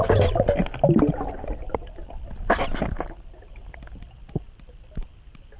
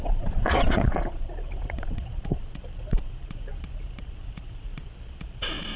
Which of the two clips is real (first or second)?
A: first